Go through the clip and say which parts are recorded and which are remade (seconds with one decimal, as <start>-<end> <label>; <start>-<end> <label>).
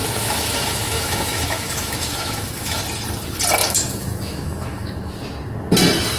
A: 0.0-2.8 remade; 2.8-3.6 recorded; 3.6-5.1 remade; 5.1-6.2 recorded